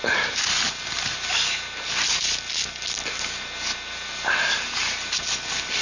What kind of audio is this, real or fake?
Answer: real